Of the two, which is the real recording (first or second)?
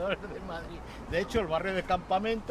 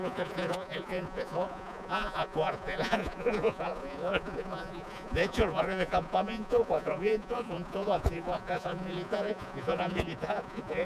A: first